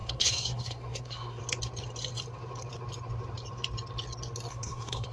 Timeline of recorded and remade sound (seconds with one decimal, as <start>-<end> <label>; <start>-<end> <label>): 0.0-1.4 remade; 1.4-4.5 recorded; 4.5-5.1 remade